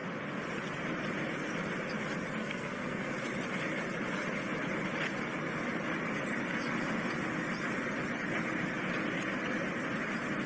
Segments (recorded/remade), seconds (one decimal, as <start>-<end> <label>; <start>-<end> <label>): 0.0-2.4 recorded; 2.4-3.1 remade; 3.1-10.5 recorded